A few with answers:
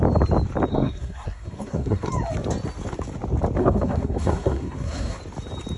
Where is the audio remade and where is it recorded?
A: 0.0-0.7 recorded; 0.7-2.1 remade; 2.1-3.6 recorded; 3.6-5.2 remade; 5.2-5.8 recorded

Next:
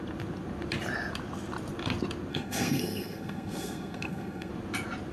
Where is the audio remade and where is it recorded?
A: 0.0-2.3 recorded; 2.3-4.5 remade; 4.5-5.1 recorded

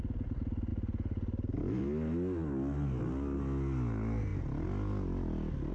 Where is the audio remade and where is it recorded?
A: 0.0-5.7 recorded

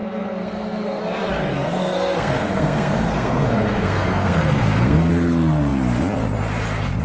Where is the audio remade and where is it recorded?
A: 0.0-1.0 remade; 1.0-1.5 recorded; 1.5-5.1 remade; 5.1-7.0 recorded

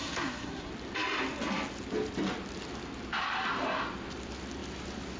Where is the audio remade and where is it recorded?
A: 0.0-0.7 remade; 0.7-5.2 recorded

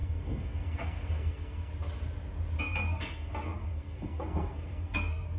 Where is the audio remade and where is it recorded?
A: 0.0-1.7 remade; 1.7-2.6 recorded; 2.6-5.4 remade

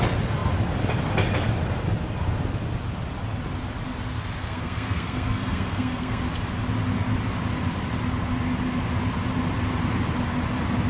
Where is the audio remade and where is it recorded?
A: 0.0-4.4 recorded; 4.4-6.2 remade; 6.2-10.9 recorded

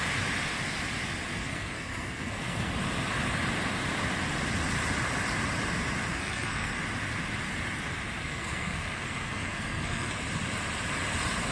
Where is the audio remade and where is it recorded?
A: 0.0-1.3 recorded; 1.3-2.7 remade; 2.7-6.1 recorded; 6.1-6.8 remade; 6.8-8.2 recorded; 8.2-10.1 remade; 10.1-11.5 recorded